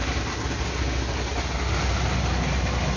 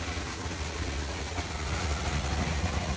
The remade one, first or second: second